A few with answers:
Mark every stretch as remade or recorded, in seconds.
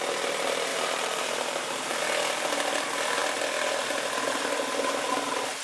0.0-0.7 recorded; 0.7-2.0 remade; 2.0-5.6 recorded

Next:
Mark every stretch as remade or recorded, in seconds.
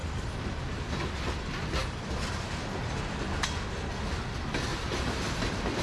0.0-1.1 remade; 1.1-1.8 recorded; 1.8-2.8 remade; 2.8-4.7 recorded; 4.7-5.8 remade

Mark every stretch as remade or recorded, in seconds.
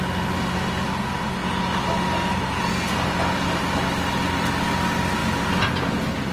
0.0-6.3 recorded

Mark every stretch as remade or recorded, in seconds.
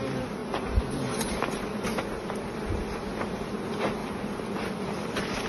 0.0-0.4 recorded; 0.4-1.7 remade; 1.7-4.0 recorded; 4.0-4.8 remade; 4.8-5.5 recorded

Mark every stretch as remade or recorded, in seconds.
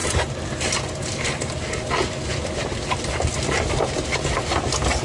0.0-1.9 remade; 1.9-5.0 recorded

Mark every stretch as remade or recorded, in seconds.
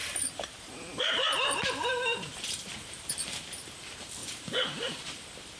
0.0-3.4 remade; 3.4-4.2 recorded; 4.2-5.0 remade; 5.0-5.6 recorded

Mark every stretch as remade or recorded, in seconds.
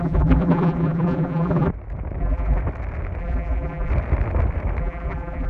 0.0-1.7 remade; 1.7-2.2 recorded; 2.2-2.6 remade; 2.6-3.2 recorded; 3.2-3.9 remade; 3.9-4.8 recorded; 4.8-5.5 remade